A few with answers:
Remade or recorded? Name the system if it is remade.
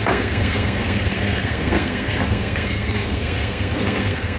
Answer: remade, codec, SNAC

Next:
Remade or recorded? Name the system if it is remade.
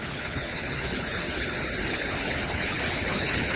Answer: remade, codec, HILCodec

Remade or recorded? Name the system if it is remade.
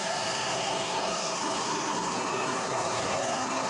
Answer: remade, codec, SNAC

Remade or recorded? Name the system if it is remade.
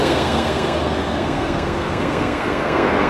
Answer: remade, codec, SNAC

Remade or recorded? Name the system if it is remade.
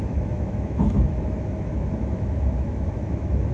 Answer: remade, autoencoder, DAC-VAE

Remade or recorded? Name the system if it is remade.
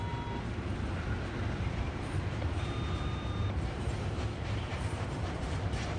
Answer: remade, vocoder, BigVGAN v2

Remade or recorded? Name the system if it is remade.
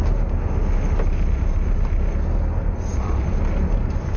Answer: recorded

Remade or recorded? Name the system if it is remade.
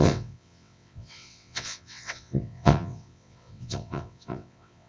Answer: remade, vocoder, WaveNeXt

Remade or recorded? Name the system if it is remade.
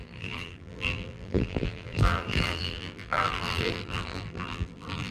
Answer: remade, vocoder, BigVGAN v2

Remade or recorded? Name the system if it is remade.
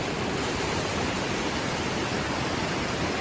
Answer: recorded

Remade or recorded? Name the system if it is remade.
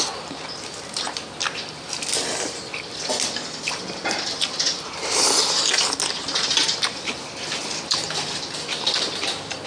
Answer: remade, vocoder, BigVGAN v2